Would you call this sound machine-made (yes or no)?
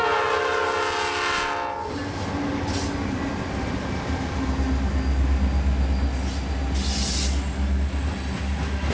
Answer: no